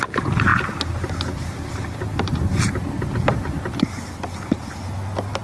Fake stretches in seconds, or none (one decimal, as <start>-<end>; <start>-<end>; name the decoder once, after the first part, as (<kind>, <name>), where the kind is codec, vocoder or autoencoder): none